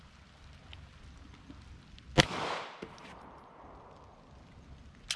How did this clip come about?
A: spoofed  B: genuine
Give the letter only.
B